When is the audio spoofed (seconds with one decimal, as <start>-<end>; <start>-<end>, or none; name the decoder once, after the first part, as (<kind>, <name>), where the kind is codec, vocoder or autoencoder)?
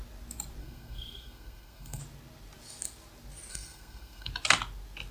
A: 0.6-2.0 (codec, SNAC); 3.5-4.3